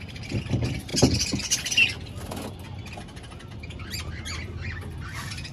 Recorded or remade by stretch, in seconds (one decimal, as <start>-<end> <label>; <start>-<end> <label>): 0.0-5.5 recorded